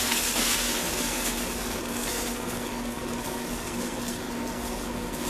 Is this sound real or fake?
fake